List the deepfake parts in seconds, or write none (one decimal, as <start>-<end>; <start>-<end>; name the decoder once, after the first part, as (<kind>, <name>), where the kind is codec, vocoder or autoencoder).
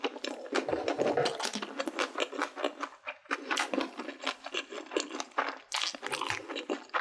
none